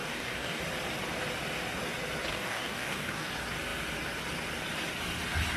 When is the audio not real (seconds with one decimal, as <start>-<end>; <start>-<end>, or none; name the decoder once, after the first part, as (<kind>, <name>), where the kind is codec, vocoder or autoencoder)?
0.0-0.6 (codec, DAC); 2.3-3.3